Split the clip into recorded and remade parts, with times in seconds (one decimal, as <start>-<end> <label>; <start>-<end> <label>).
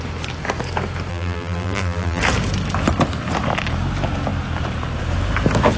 0.0-1.1 recorded; 1.1-2.2 remade; 2.2-5.8 recorded